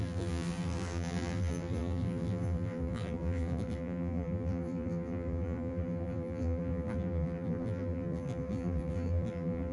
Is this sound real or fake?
fake